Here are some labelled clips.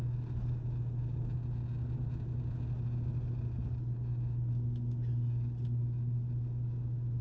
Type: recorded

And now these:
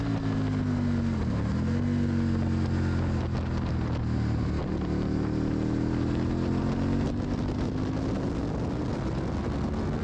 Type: recorded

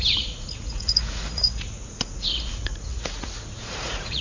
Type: remade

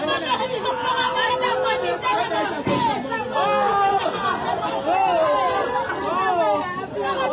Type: recorded